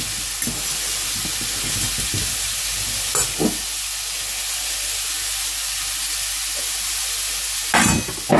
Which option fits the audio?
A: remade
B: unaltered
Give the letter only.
B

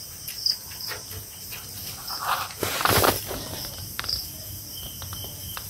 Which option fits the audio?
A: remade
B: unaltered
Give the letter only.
A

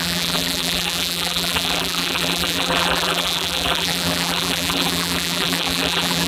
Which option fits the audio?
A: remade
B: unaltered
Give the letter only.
A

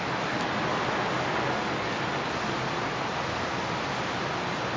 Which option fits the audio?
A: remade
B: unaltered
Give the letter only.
B